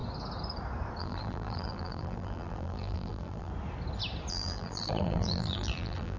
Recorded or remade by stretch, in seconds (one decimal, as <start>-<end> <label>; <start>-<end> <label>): 0.0-1.0 recorded; 1.0-3.5 remade; 3.5-4.3 recorded; 4.3-6.2 remade